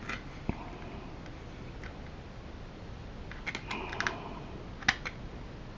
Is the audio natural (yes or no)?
yes